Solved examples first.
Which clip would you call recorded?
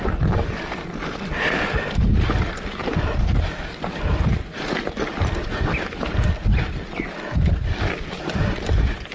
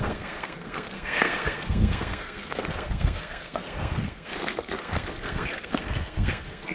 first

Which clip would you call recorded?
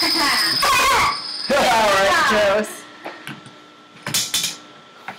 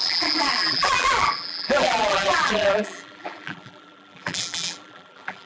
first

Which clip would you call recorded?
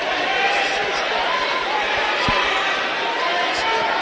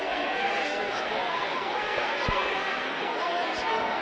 first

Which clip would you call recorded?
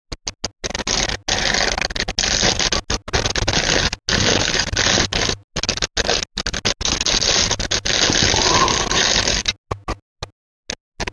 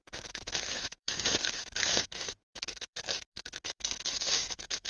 first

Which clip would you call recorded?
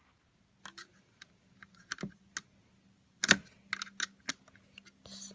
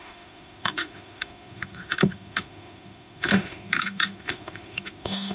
first